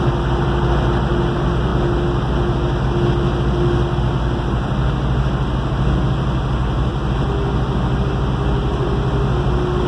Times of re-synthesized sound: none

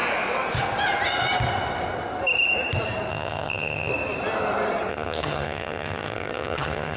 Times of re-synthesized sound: 3.1-3.9 (vocoder, HiFi-GAN); 4.9-7.0